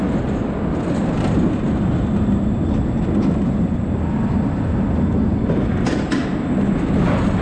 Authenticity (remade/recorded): recorded